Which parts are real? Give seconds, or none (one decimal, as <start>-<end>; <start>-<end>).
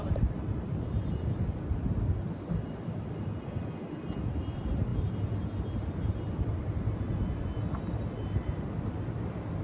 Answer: 4.9-5.7